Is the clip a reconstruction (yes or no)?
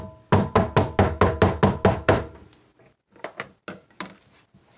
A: no